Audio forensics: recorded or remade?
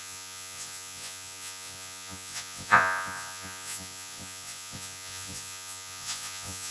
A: remade